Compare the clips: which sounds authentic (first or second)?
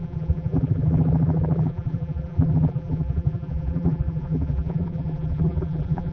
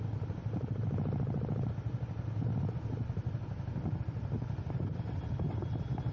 second